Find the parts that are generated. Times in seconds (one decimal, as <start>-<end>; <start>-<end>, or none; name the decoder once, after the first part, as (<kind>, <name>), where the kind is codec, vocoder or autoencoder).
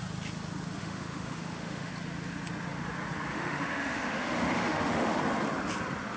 0.8-1.9 (autoencoder, DAC-VAE); 3.3-5.2